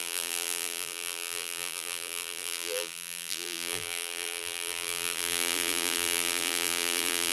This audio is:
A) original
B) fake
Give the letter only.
B